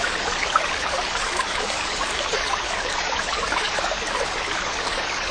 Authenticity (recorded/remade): remade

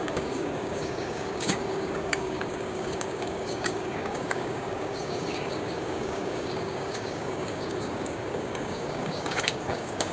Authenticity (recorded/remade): remade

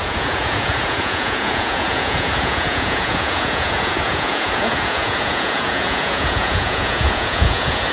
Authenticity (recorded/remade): remade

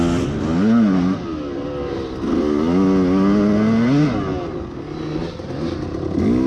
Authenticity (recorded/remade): recorded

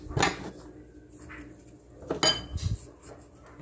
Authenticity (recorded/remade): recorded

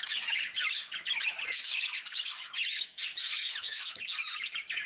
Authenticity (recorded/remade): remade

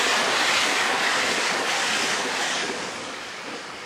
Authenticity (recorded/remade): remade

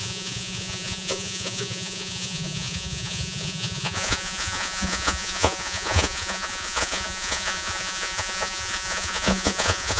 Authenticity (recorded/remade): remade